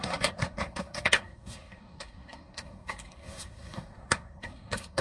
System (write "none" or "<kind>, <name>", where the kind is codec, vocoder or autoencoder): codec, SNAC